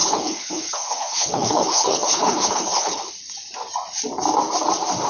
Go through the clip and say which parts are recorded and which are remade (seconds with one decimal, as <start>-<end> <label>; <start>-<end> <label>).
0.0-3.1 remade; 3.1-5.1 recorded